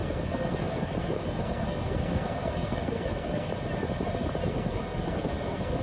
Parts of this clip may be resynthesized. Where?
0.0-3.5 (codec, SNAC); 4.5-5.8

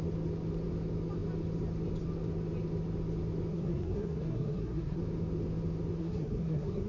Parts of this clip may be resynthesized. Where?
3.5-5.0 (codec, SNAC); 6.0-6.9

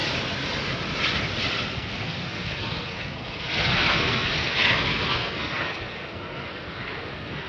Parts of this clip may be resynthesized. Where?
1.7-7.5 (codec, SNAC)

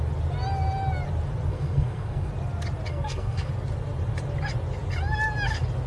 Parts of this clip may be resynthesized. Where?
1.5-2.3 (codec, SNAC); 2.9-3.5

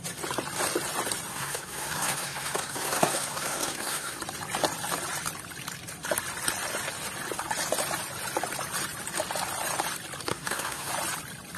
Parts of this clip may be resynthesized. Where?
1.3-4.2 (codec, SNAC); 10.3-10.9